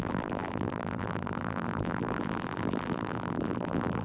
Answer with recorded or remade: remade